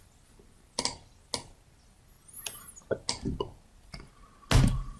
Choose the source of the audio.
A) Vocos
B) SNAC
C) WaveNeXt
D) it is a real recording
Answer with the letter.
D